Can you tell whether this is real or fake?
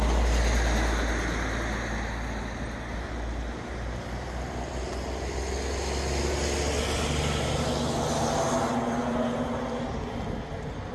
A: real